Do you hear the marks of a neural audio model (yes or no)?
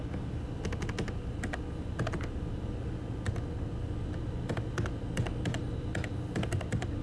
no